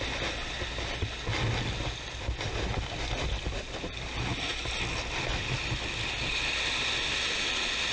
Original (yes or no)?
yes